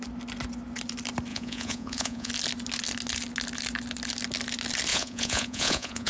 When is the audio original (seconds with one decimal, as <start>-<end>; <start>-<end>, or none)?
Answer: 0.0-1.3; 2.3-4.9